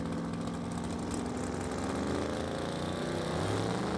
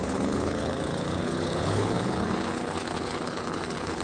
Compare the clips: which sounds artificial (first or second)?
second